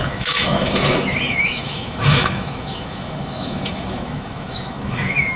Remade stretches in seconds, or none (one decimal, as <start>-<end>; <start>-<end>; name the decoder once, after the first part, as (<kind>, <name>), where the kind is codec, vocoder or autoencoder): 0.0-5.4 (autoencoder, DAC-VAE)